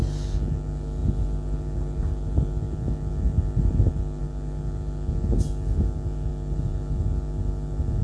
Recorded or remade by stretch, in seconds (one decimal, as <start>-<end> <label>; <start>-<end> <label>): 0.0-8.0 recorded